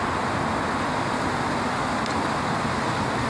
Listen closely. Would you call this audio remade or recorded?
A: recorded